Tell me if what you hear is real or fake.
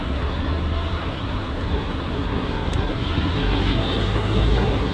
fake